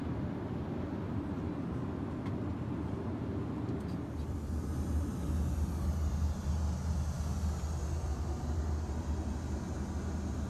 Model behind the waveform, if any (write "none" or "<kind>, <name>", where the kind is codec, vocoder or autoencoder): none